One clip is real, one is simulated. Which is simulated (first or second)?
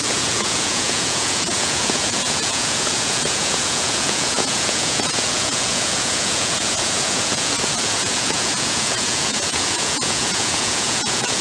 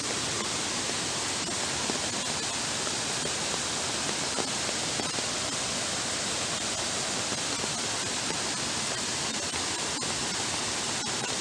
first